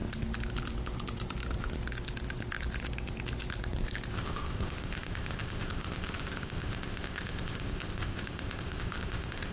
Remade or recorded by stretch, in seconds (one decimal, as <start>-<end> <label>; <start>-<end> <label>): 0.0-4.1 recorded; 4.1-9.5 remade

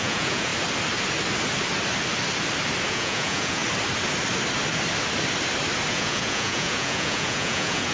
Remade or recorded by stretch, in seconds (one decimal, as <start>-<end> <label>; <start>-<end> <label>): 0.0-0.5 remade; 0.5-2.9 recorded; 2.9-3.6 remade; 3.6-5.9 recorded; 5.9-7.9 remade